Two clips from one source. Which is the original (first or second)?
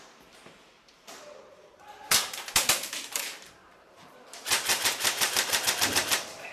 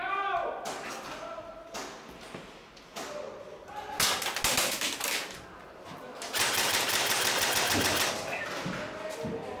second